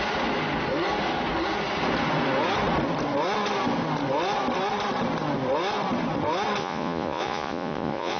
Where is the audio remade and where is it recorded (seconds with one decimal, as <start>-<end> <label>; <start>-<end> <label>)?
0.0-6.6 recorded; 6.6-8.2 remade